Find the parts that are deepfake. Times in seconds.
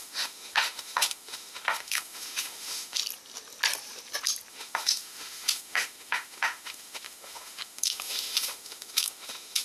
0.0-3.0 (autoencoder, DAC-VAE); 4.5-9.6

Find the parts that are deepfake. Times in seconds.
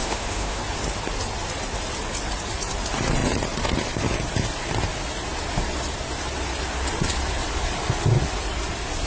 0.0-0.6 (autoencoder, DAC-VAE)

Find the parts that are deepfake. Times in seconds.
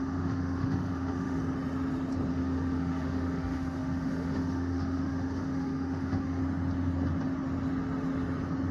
0.0-1.4 (autoencoder, DAC-VAE); 2.3-6.4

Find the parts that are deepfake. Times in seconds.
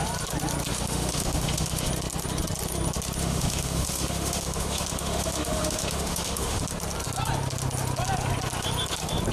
0.7-1.9 (autoencoder, DAC-VAE); 3.2-6.6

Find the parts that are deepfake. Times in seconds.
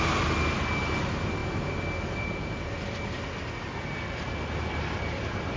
none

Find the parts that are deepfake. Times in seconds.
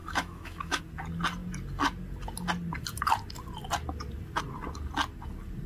0.0-0.8 (autoencoder, DAC-VAE)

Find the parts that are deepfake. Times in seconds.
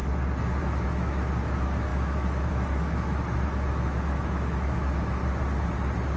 0.6-5.2 (autoencoder, DAC-VAE)